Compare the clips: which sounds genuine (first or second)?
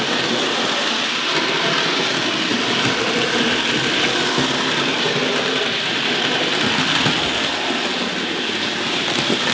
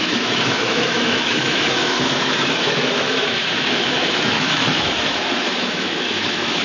first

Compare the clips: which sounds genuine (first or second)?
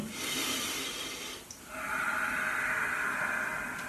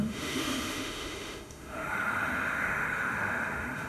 first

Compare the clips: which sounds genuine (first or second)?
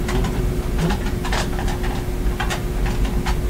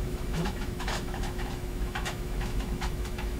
first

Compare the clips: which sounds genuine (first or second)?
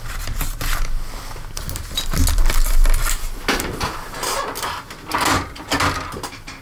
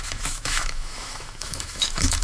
first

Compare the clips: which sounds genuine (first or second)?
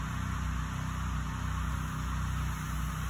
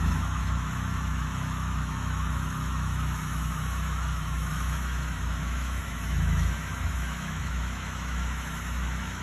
first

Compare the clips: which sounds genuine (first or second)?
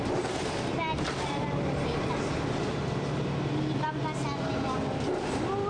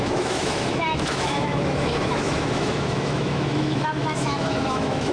first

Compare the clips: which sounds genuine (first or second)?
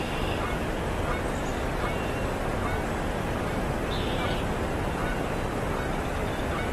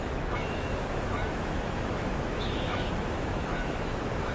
first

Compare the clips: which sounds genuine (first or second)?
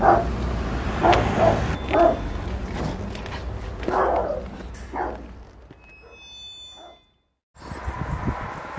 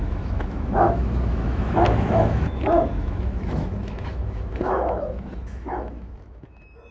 first